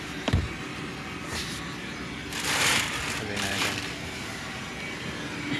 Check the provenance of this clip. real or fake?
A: real